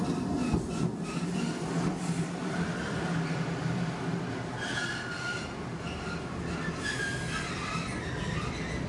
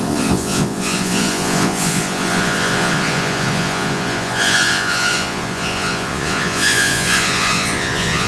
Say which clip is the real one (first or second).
first